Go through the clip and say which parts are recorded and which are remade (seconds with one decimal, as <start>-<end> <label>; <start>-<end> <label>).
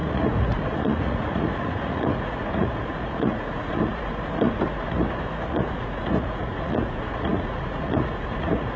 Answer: 0.0-8.8 remade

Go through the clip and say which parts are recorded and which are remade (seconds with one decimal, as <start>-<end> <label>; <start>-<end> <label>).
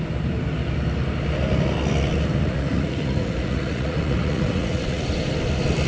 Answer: 0.0-2.4 recorded; 2.4-5.0 remade; 5.0-5.9 recorded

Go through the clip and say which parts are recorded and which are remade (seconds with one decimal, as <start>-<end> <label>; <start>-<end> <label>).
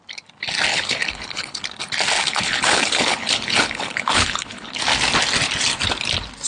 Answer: 0.0-0.7 recorded; 0.7-1.6 remade; 1.6-2.2 recorded; 2.2-4.8 remade; 4.8-6.5 recorded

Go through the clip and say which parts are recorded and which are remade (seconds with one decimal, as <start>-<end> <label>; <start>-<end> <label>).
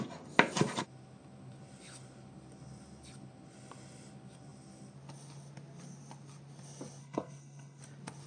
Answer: 0.0-7.0 recorded; 7.0-7.8 remade; 7.8-8.3 recorded